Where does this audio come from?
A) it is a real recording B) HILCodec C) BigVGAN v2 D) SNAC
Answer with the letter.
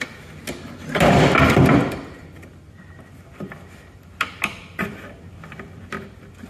A